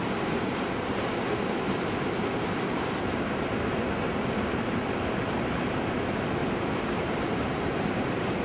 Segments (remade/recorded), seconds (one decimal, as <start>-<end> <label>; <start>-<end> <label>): 0.0-8.4 recorded